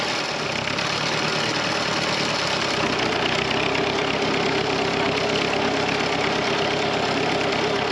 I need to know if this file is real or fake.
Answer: real